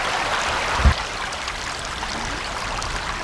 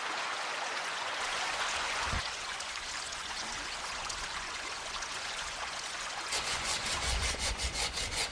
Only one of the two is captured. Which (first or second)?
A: first